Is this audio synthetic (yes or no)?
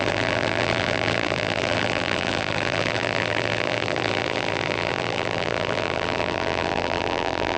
yes